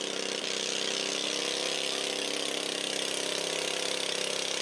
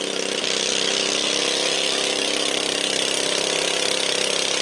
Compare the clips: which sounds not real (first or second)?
second